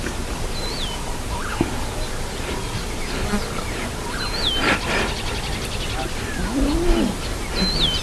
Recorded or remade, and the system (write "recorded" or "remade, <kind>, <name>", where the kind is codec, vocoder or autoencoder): recorded